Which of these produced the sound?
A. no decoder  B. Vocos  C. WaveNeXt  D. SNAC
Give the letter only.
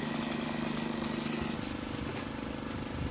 A